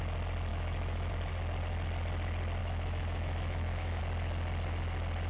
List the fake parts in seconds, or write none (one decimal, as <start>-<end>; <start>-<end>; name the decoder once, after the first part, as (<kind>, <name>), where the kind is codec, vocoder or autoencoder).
0.5-1.1 (autoencoder, DAC-VAE); 2.6-4.0